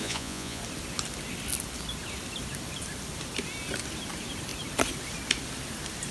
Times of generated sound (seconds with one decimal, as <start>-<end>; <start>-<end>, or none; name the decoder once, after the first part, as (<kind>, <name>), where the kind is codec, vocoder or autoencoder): 0.0-0.6 (vocoder, Vocos)